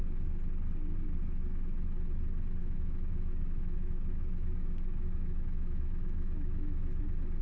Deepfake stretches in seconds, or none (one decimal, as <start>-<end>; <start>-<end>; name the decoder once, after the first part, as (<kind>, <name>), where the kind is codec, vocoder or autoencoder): 2.6-7.0 (autoencoder, DAC-VAE)